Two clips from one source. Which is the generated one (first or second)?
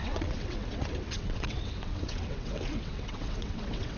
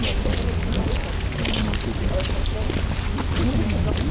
first